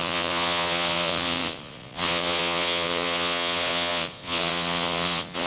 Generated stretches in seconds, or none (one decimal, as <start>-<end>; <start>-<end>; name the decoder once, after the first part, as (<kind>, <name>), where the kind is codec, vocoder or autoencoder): 0.0-5.5 (vocoder, Vocos)